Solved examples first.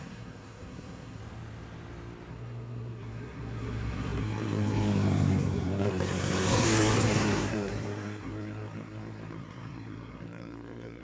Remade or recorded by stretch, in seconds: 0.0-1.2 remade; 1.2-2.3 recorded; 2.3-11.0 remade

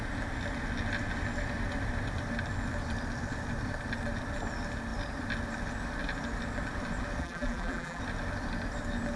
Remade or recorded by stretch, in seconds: 0.0-7.2 recorded; 7.2-8.0 remade; 8.0-9.2 recorded

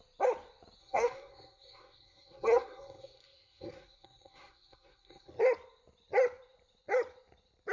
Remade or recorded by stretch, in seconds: 0.0-0.8 recorded; 0.8-5.3 remade; 5.3-7.7 recorded

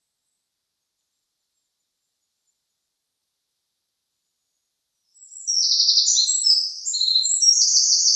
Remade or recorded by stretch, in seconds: 0.0-8.2 recorded